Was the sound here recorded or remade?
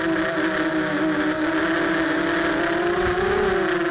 recorded